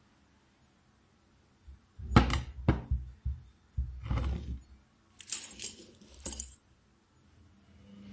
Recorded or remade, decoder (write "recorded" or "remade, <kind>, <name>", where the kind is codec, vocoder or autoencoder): recorded